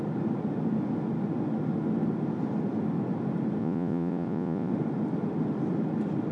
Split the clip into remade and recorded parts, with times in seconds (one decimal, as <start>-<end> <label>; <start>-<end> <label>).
0.0-3.6 recorded; 3.6-4.7 remade; 4.7-6.3 recorded